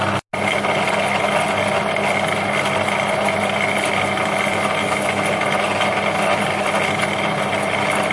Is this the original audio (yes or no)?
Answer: yes